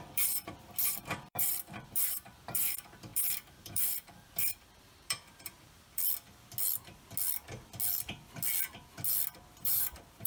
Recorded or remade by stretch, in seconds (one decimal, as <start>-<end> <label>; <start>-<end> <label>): 0.0-6.0 remade; 6.0-9.6 recorded; 9.6-10.3 remade